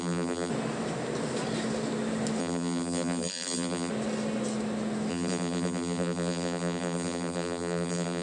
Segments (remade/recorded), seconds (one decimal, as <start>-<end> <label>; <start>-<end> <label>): 0.0-0.5 remade; 0.5-2.4 recorded; 2.4-3.9 remade; 3.9-5.1 recorded; 5.1-8.2 remade